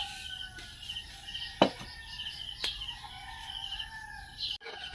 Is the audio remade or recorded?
recorded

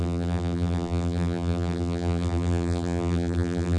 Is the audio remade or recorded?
remade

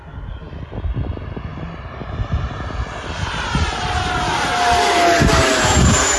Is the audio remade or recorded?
recorded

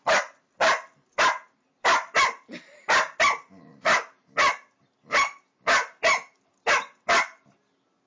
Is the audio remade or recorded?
recorded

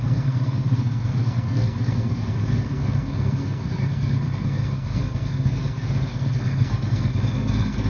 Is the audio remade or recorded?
remade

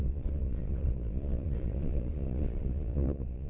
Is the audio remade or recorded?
remade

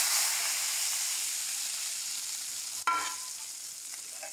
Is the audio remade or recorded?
recorded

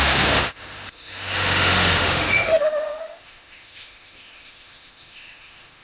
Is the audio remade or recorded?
remade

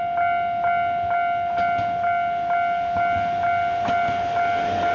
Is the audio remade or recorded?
recorded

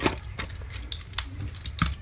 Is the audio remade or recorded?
recorded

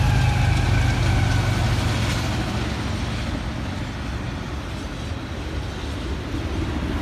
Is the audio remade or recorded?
recorded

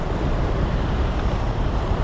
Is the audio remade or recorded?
remade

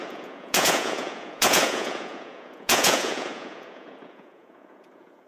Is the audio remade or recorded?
remade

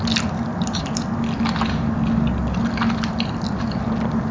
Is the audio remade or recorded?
recorded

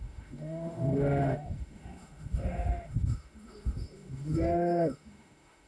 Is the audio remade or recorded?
remade